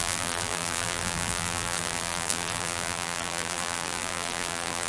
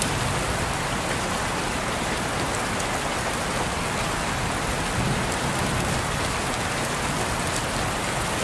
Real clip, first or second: second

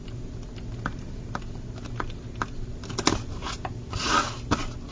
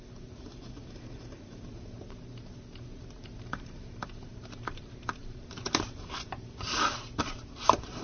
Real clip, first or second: first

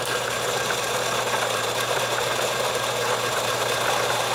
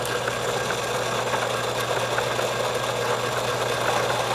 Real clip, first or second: second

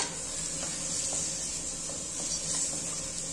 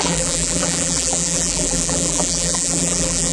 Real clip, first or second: first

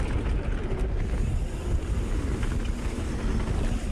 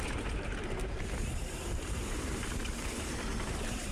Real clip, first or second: first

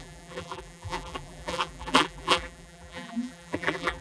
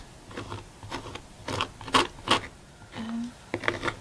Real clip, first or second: second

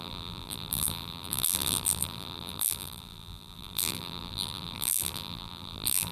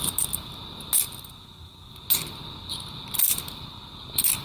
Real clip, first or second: second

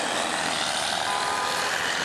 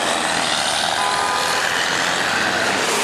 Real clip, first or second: second